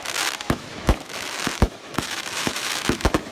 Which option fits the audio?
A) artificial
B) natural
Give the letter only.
A